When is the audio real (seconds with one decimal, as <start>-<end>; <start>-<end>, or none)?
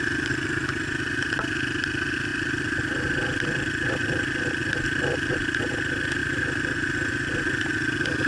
0.0-8.3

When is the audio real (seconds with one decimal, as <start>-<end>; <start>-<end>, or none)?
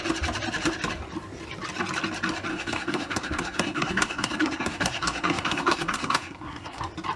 0.0-2.5; 6.8-7.2